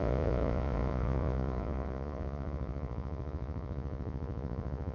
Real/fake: fake